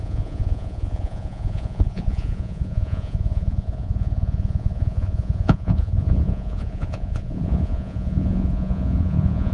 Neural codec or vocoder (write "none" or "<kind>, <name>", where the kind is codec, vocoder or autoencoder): vocoder, Vocos